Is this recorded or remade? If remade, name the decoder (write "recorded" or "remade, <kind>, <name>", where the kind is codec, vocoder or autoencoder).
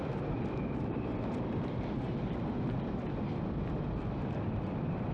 recorded